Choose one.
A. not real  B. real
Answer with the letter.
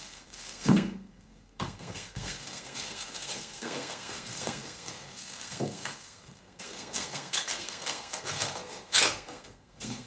A